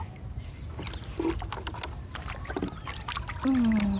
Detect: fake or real real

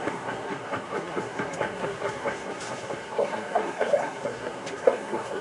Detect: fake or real fake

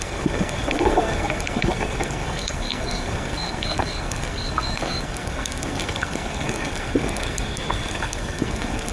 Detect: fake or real fake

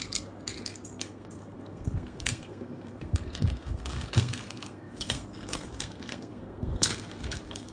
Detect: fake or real fake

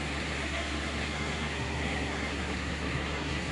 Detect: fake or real fake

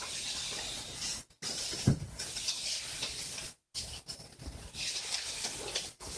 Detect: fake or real real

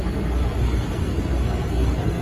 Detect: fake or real fake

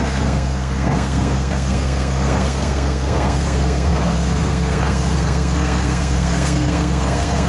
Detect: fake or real fake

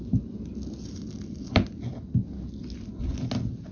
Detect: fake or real real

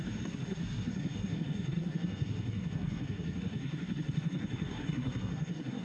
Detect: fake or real fake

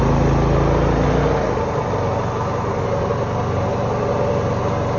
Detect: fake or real real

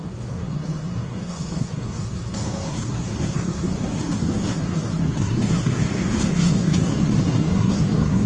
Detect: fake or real fake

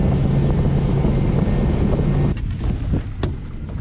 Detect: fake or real real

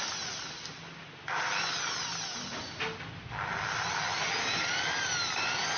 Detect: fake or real real